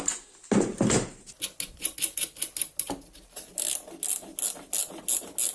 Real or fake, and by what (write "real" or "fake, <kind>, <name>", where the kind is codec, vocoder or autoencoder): real